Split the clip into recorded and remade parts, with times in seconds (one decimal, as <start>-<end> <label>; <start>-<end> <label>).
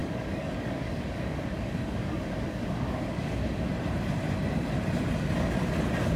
0.0-3.7 remade; 3.7-6.2 recorded